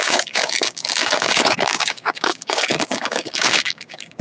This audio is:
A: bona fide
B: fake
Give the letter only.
B